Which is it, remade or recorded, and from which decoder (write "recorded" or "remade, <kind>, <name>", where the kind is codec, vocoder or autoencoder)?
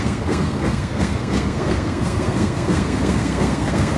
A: remade, codec, SNAC